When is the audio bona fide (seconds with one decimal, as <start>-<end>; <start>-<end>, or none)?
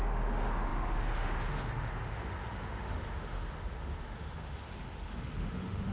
none